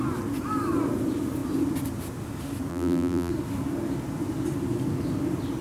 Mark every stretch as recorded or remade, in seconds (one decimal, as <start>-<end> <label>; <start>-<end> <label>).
0.0-2.7 recorded; 2.7-3.3 remade; 3.3-5.6 recorded